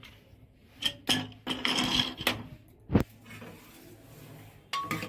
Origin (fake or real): real